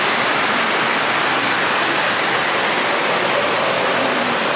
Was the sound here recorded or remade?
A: recorded